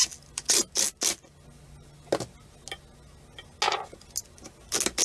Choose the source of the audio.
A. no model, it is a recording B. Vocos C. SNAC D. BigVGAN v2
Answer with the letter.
A